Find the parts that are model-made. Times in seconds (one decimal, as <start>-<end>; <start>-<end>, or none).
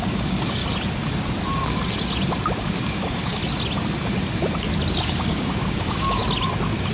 0.0-0.6; 2.6-3.4; 4.9-6.2